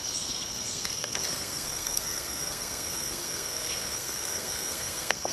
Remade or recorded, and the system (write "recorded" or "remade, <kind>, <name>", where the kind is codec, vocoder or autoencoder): remade, codec, SNAC